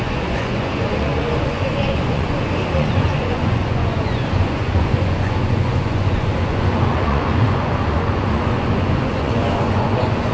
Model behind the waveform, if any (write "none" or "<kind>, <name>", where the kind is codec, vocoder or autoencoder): vocoder, Vocos